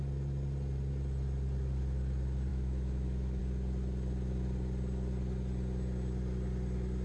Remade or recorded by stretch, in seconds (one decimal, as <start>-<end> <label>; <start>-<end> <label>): 0.0-2.5 recorded; 2.5-3.4 remade; 3.4-7.0 recorded